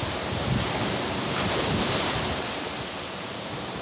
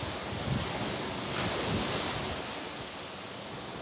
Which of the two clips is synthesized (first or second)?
first